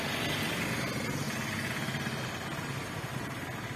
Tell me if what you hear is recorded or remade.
recorded